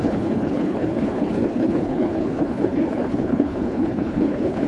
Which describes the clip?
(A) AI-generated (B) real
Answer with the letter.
A